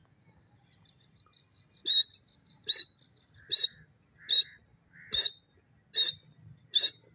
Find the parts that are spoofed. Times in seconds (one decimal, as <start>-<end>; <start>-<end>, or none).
none